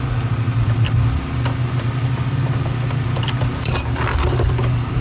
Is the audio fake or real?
fake